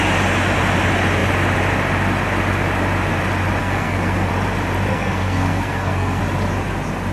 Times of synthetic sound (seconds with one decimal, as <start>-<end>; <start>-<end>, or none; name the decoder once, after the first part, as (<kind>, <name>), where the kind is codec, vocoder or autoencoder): 3.6-4.3 (codec, SNAC); 4.9-6.2